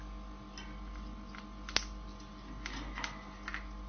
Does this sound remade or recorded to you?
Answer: recorded